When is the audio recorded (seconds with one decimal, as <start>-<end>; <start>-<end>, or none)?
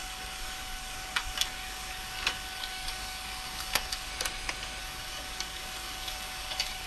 4.1-4.8